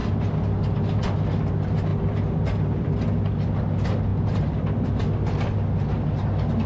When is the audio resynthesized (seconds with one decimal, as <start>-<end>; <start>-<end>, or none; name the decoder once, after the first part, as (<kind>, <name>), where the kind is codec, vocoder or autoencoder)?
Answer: 1.9-3.3 (vocoder, BigVGAN v2); 4.1-5.0